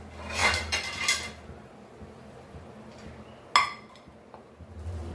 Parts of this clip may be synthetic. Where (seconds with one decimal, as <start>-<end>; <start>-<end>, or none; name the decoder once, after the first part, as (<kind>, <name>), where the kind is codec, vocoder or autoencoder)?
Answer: 0.4-3.1 (vocoder, BigVGAN v2)